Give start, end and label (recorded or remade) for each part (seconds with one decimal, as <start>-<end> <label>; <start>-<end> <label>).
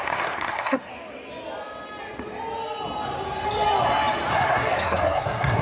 0.0-0.9 remade; 0.9-4.3 recorded; 4.3-5.6 remade